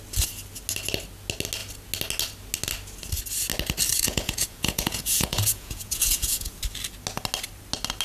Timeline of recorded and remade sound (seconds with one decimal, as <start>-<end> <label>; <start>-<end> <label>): 0.0-3.9 recorded; 3.9-6.6 remade; 6.6-8.0 recorded